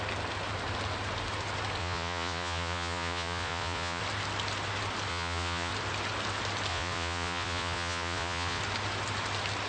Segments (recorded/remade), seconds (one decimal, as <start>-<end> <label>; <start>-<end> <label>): 0.0-1.8 recorded; 1.8-4.0 remade; 4.0-5.1 recorded; 5.1-5.7 remade; 5.7-6.7 recorded; 6.7-8.6 remade; 8.6-9.7 recorded